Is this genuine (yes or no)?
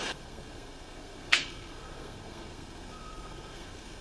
no